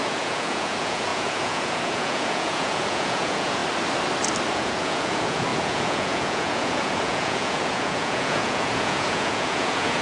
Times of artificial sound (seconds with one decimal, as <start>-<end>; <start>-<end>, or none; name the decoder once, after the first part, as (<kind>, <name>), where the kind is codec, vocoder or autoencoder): 0.0-3.6 (vocoder, Vocos); 4.5-10.0